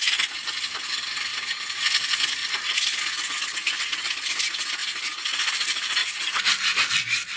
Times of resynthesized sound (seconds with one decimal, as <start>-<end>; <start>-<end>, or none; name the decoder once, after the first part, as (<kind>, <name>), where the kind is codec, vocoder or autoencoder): 1.3-1.8 (vocoder, Vocos); 2.4-3.0; 6.0-6.9